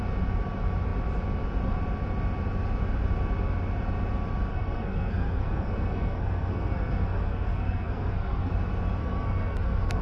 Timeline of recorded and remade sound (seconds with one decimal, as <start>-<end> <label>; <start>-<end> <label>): 0.0-4.5 recorded; 4.5-8.5 remade; 8.5-9.0 recorded; 9.0-10.0 remade